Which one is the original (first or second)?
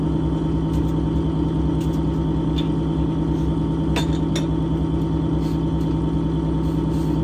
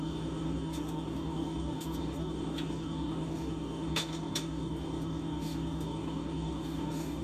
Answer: first